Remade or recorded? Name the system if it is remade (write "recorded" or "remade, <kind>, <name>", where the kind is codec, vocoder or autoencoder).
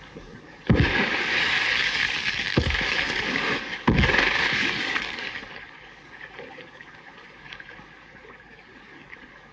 remade, codec, DAC